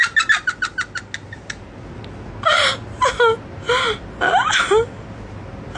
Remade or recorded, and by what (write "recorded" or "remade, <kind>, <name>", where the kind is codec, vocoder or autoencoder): recorded